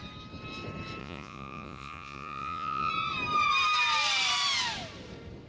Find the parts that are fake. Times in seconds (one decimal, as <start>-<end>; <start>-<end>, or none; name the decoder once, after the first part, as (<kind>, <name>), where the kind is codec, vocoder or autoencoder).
1.0-2.9 (vocoder, Vocos)